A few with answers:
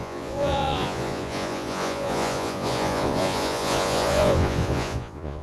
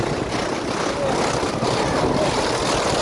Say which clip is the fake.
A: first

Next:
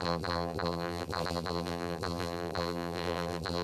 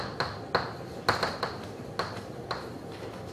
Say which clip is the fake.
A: first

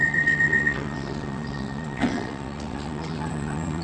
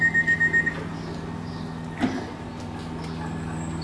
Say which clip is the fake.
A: first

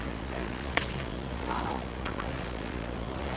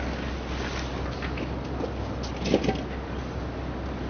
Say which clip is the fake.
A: first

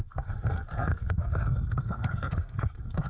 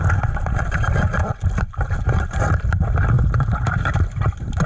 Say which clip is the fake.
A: first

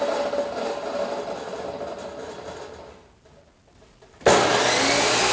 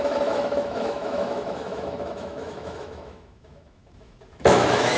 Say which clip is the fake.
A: second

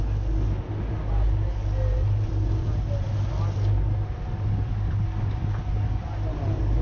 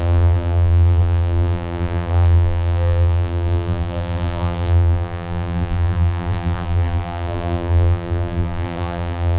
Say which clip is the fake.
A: second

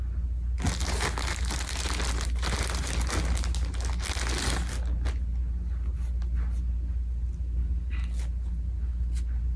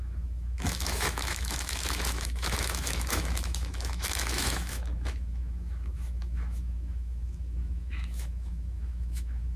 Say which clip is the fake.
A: second